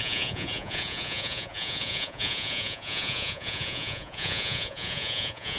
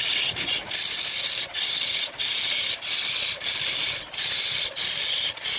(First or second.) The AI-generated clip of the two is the first